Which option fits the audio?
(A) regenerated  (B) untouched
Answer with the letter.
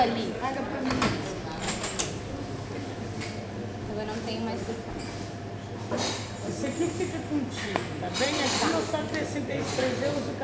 B